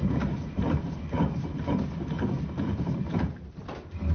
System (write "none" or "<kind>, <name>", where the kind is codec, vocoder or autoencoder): vocoder, BigVGAN v2